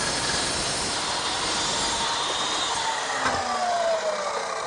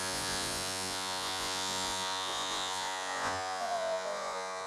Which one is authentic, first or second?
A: first